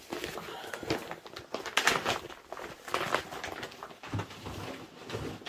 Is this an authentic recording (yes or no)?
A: yes